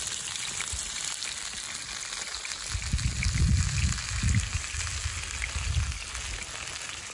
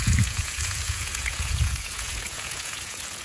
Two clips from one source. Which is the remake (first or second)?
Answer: second